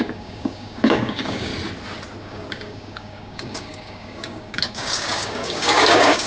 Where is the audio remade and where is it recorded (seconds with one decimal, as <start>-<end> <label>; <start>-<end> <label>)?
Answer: 0.0-1.5 remade; 1.5-2.2 recorded; 2.2-6.3 remade